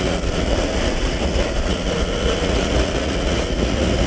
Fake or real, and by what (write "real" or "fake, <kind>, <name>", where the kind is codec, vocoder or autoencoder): fake, vocoder, Vocos